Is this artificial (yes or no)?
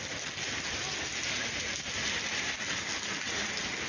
no